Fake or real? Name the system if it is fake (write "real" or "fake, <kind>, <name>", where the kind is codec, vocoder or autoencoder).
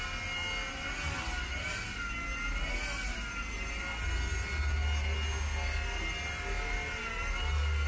real